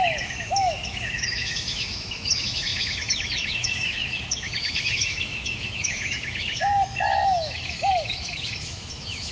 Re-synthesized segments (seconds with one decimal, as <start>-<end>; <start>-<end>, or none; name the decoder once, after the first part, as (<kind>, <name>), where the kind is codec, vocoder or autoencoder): 0.0-9.3 (autoencoder, DAC-VAE)